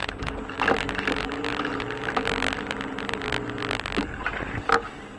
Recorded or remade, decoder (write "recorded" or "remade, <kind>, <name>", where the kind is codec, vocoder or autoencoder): recorded